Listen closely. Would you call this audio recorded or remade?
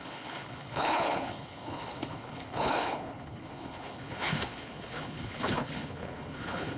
remade